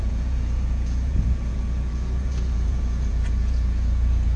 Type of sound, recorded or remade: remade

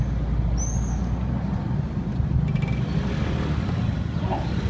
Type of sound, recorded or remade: recorded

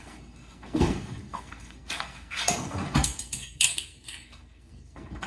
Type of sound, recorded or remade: remade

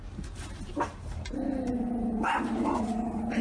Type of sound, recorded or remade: remade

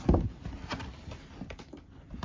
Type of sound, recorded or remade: recorded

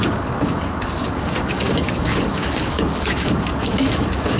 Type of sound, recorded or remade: remade